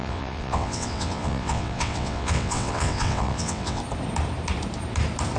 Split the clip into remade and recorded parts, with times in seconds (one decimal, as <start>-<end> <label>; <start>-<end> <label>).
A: 0.0-3.8 remade; 3.8-5.4 recorded